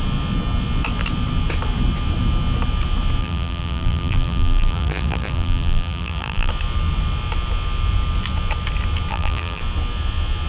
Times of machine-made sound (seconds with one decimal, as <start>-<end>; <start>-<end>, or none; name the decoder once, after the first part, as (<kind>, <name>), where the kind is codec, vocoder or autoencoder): 3.2-6.5 (vocoder, BigVGAN v2); 9.1-9.6